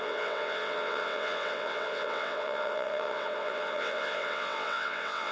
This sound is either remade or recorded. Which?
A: remade